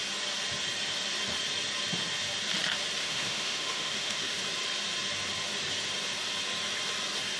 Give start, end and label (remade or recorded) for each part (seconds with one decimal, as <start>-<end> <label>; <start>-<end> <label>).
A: 0.0-3.0 recorded; 3.0-4.4 remade; 4.4-7.4 recorded